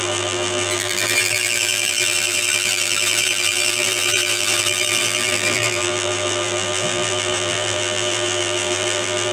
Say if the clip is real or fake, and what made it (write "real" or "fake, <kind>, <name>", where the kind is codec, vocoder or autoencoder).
fake, vocoder, BigVGAN v2